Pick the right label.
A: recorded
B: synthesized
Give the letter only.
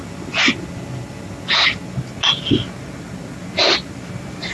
A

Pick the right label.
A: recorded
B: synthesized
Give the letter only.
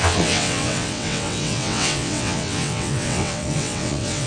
B